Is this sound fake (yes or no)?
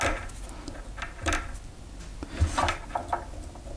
no